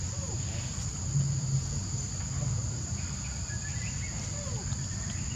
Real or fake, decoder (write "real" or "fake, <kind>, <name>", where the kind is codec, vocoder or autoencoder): real